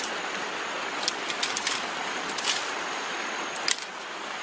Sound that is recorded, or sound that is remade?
recorded